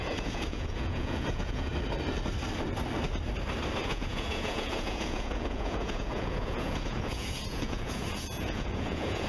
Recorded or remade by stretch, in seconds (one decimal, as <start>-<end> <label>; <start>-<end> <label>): 0.0-1.7 remade; 1.7-3.8 recorded; 3.8-9.3 remade